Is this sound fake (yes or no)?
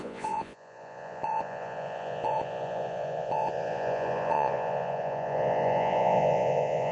yes